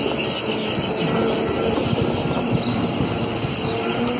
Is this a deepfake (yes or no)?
no